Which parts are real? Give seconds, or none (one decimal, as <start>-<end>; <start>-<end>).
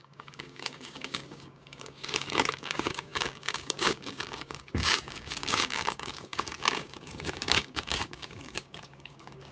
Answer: none